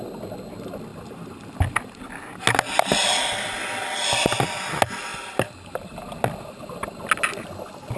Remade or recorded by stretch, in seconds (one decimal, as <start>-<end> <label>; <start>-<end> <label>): 0.0-8.0 recorded